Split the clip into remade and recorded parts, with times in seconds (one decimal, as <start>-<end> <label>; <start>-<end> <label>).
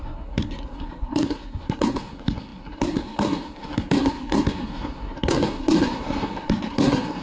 0.0-7.2 remade